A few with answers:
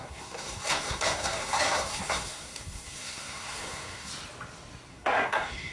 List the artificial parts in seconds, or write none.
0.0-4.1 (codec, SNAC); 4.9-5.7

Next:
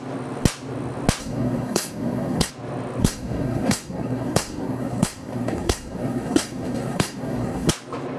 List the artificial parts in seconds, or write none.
1.2-2.5 (codec, SNAC); 3.0-7.7

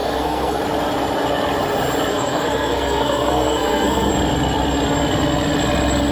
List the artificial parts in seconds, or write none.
0.0-0.6 (codec, SNAC); 2.1-4.1

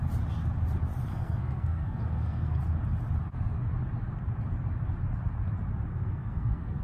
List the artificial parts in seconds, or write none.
1.1-2.6 (codec, SNAC); 5.9-6.8

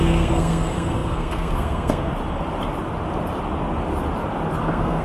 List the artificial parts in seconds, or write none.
0.0-2.1 (codec, SNAC); 4.6-5.0